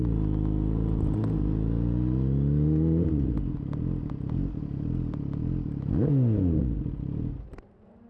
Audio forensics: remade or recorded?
recorded